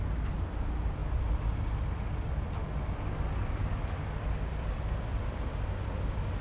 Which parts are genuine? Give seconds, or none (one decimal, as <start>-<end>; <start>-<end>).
0.0-6.4